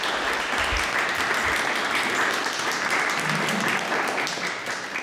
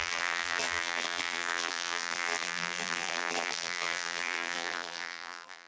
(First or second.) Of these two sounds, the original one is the first